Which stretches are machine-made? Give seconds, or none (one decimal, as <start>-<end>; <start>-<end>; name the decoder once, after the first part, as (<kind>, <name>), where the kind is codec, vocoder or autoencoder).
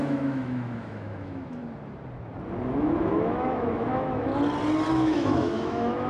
0.0-1.6 (autoencoder, DAC-VAE); 2.7-4.3; 4.9-6.1